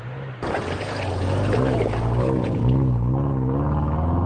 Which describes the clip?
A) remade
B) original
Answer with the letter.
B